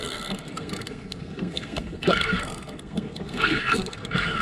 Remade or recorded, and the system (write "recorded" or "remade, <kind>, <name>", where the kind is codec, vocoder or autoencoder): remade, codec, SNAC